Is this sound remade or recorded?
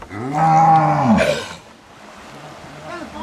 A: recorded